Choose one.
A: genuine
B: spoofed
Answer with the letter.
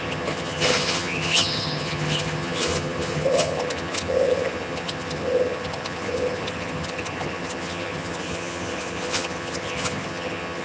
B